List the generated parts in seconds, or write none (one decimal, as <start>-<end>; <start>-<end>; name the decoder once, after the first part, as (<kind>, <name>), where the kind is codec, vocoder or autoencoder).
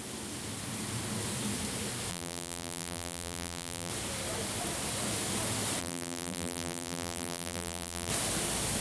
2.1-3.9 (vocoder, BigVGAN v2); 5.8-8.1